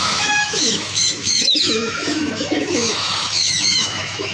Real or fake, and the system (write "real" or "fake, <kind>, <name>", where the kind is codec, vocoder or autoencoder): fake, autoencoder, DAC-VAE